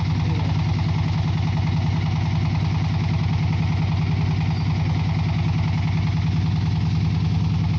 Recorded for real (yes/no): yes